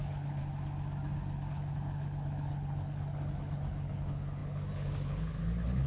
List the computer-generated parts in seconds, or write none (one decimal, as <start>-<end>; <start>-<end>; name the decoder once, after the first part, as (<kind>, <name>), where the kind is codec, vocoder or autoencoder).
0.0-0.4 (codec, HILCodec); 1.5-5.9